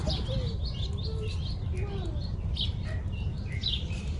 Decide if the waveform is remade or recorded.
recorded